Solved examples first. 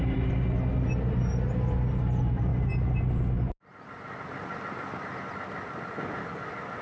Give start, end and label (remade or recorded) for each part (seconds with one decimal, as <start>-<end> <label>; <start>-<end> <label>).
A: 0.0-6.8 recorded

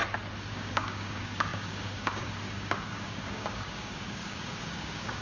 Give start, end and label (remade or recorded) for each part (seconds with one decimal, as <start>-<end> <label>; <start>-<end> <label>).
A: 0.0-0.5 recorded; 0.5-5.2 remade

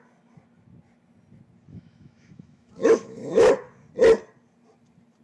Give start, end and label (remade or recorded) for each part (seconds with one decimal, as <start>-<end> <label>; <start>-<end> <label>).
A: 0.0-1.7 recorded; 1.7-3.5 remade; 3.5-5.2 recorded